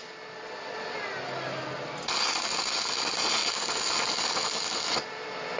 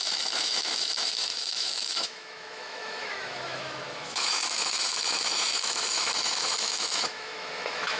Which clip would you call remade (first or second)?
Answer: second